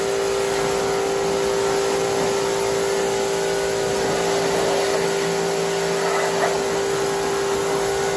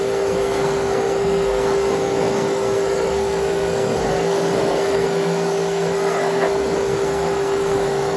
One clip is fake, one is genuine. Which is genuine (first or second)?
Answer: first